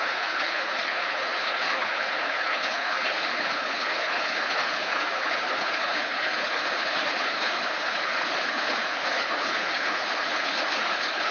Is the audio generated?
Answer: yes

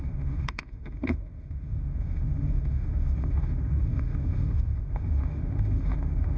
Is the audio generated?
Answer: yes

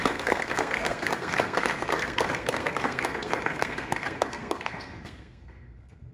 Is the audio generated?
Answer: yes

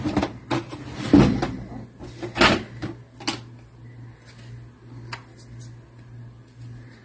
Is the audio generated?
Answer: no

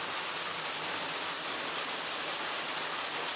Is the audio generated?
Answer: no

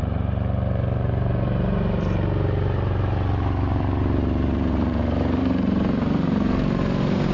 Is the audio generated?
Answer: yes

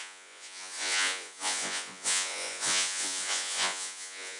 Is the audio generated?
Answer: yes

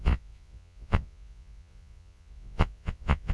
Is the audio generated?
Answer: yes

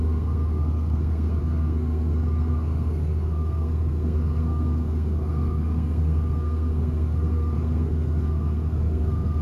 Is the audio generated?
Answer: yes